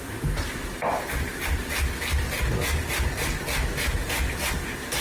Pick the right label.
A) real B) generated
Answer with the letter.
A